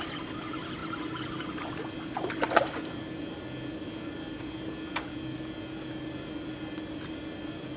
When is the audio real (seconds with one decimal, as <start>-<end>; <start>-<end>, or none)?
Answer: 0.0-7.8